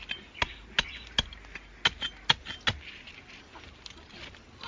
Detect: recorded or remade recorded